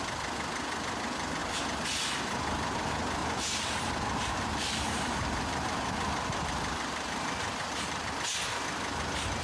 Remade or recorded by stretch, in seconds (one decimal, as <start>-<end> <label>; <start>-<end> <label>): 0.0-3.2 recorded; 3.2-8.1 remade; 8.1-9.4 recorded